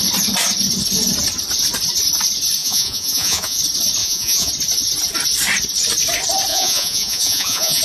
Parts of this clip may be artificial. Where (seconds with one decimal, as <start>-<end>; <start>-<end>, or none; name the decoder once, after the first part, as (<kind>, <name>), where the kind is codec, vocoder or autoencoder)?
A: 2.6-3.6 (vocoder, Vocos); 4.0-4.5; 6.5-7.8

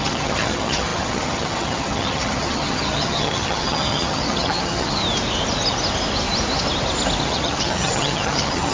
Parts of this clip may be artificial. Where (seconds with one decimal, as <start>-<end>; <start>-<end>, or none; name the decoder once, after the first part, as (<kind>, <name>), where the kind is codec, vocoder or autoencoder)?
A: 0.0-5.0 (vocoder, HiFi-GAN); 7.2-8.7

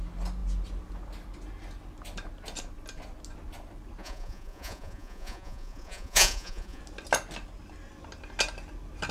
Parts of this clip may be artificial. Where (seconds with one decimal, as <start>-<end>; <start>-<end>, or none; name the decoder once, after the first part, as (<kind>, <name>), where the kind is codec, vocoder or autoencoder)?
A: 4.0-6.8 (vocoder, Vocos)